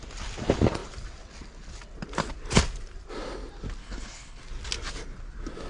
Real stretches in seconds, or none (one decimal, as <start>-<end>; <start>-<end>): 0.0-3.8; 4.4-5.7